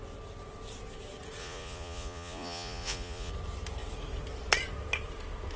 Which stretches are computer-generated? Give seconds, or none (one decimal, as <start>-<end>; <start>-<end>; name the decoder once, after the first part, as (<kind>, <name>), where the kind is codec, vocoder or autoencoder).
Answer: 1.4-3.3 (vocoder, Vocos)